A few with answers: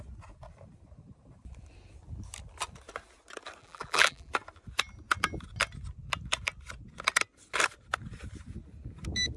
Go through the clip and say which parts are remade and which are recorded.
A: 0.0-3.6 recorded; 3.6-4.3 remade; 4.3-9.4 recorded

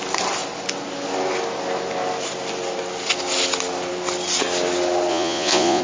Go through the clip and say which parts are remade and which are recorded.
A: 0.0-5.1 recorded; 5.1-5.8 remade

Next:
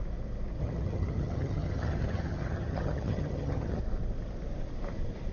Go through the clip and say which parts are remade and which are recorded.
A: 0.0-0.6 recorded; 0.6-3.8 remade; 3.8-5.3 recorded